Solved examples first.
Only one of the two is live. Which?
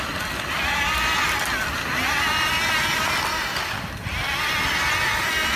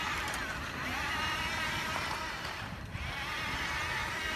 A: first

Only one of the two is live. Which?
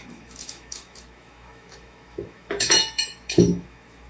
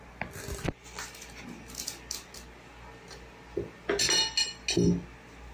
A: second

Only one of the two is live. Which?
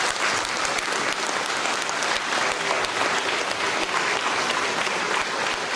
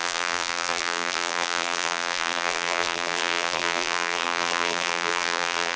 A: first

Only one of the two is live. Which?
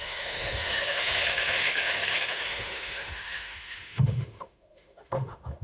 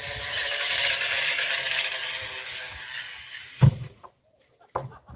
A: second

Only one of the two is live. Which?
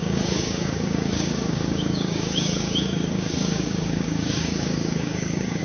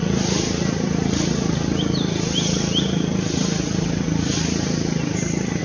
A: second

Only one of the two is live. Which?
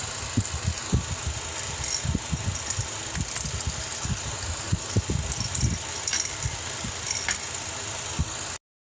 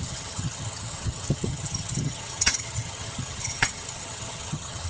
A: first